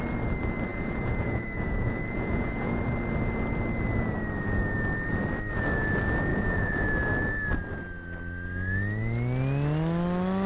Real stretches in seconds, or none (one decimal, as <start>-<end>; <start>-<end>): 0.0-0.7; 2.7-6.3; 6.9-10.5